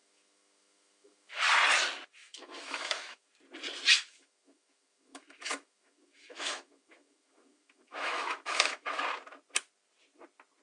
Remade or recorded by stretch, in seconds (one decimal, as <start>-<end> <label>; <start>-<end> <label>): 0.0-1.4 remade; 1.4-2.2 recorded; 2.2-3.3 remade; 3.3-3.9 recorded; 3.9-9.0 remade; 9.0-10.6 recorded